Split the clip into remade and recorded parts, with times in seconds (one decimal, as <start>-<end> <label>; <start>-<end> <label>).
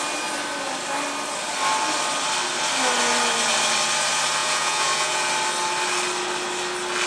0.0-4.4 recorded; 4.4-5.3 remade; 5.3-7.1 recorded